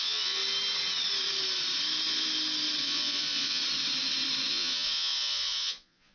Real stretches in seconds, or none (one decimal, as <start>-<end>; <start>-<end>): 0.4-2.8; 3.6-4.5